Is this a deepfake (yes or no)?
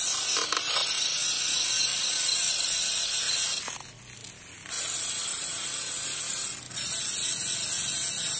no